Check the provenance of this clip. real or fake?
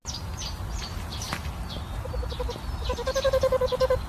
real